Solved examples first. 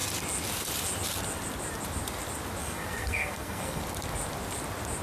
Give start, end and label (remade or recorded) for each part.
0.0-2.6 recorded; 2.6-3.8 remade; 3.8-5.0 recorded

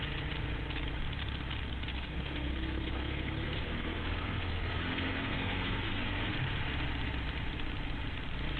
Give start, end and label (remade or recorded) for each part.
0.0-1.9 recorded; 1.9-6.3 remade; 6.3-8.6 recorded

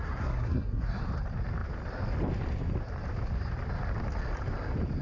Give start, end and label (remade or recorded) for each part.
0.0-1.0 remade; 1.0-5.0 recorded